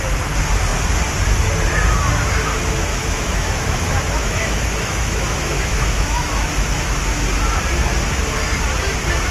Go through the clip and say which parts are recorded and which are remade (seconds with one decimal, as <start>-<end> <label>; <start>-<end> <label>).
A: 0.0-2.9 recorded; 2.9-7.0 remade; 7.0-9.3 recorded